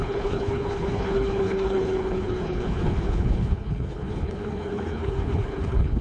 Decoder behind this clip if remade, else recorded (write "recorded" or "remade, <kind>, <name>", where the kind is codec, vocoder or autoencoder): remade, codec, HILCodec